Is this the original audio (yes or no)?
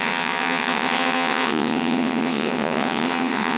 no